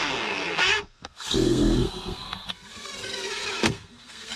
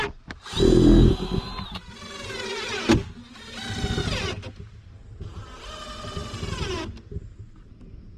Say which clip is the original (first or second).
second